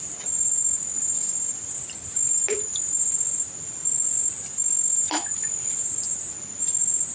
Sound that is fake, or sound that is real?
real